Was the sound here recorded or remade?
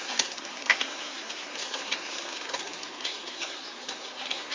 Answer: remade